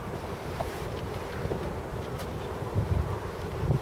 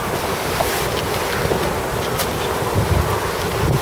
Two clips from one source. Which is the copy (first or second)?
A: first